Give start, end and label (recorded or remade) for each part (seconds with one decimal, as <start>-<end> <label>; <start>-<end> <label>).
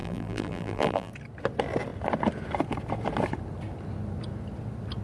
0.0-1.1 remade; 1.1-5.0 recorded